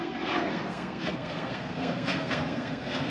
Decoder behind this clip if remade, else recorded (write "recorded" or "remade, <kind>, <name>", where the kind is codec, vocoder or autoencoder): remade, codec, SNAC